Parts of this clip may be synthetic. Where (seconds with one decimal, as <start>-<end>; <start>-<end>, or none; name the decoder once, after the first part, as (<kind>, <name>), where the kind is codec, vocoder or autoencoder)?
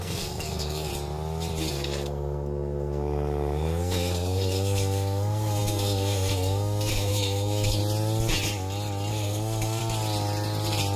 0.0-0.9 (codec, SNAC); 1.7-7.8; 9.1-9.8